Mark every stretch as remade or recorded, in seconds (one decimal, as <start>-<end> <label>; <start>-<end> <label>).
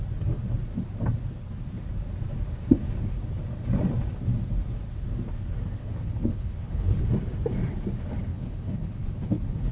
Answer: 0.0-5.8 recorded; 5.8-7.0 remade; 7.0-8.3 recorded; 8.3-9.7 remade